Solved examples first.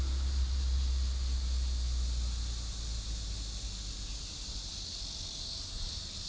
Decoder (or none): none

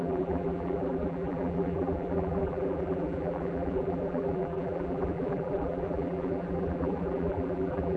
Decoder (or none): vocoder, BigVGAN v2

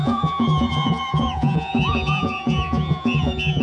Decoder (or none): vocoder, Vocos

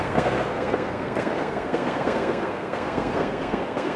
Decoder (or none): codec, SNAC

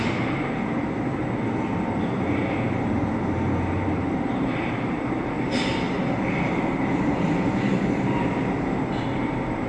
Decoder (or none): vocoder, BigVGAN v2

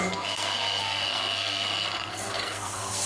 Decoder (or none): codec, SNAC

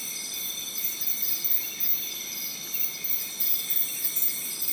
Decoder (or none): none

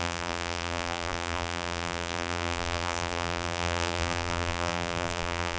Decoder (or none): vocoder, BigVGAN v2